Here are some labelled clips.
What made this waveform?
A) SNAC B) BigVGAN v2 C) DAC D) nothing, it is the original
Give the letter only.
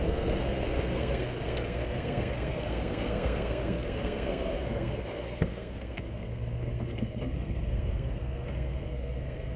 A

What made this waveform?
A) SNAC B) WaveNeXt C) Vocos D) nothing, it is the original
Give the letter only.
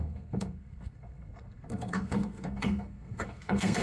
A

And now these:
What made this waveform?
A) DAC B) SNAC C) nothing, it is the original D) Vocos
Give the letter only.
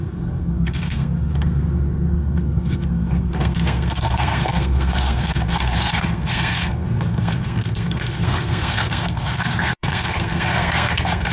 B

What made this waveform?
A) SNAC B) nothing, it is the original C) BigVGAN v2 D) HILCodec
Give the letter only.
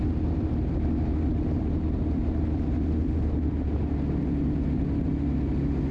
B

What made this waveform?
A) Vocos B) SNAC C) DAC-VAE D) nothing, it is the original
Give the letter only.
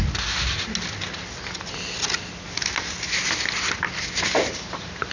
D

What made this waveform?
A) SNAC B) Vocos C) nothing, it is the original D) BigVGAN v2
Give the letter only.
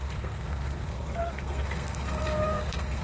A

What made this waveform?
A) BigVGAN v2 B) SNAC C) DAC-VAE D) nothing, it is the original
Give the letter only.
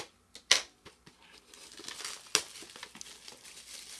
D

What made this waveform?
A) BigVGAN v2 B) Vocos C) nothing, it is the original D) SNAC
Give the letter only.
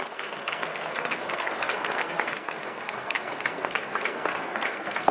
D